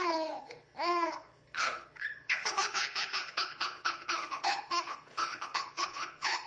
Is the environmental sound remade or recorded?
remade